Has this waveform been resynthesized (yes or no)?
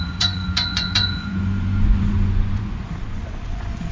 yes